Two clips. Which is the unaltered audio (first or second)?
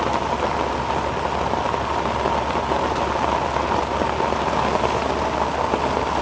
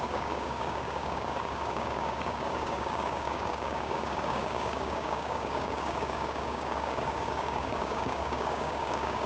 first